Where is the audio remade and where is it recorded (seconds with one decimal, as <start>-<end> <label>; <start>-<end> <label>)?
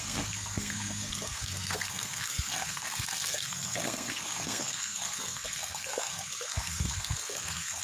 0.0-7.8 remade